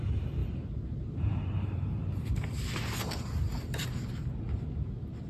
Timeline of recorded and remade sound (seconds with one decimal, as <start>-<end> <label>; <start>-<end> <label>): 0.0-0.4 recorded; 0.4-2.2 remade; 2.2-5.3 recorded